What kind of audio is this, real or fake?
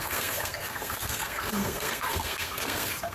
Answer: fake